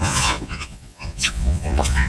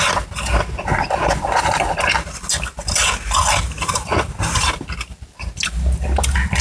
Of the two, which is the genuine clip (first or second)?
second